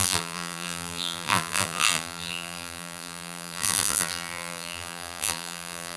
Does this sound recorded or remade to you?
remade